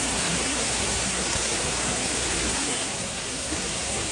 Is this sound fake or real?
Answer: fake